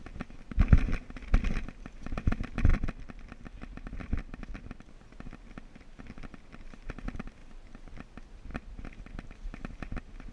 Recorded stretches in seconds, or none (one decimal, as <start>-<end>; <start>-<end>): 0.0-7.4; 8.0-8.5; 9.1-10.3